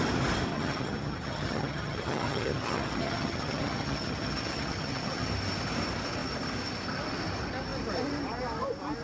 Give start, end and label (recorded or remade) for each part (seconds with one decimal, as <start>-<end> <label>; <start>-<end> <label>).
0.0-0.5 recorded; 0.5-5.3 remade; 5.3-9.0 recorded